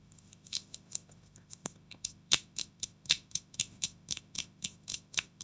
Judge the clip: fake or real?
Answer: fake